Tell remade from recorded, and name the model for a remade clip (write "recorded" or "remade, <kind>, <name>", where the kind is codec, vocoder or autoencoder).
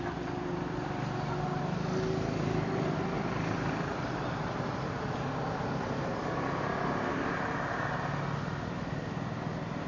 recorded